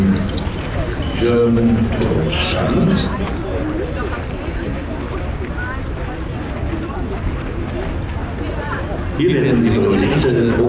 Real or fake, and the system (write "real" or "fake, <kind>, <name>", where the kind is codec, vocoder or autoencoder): real